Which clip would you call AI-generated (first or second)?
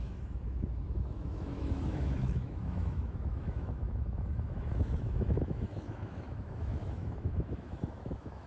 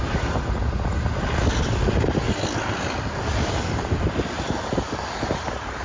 first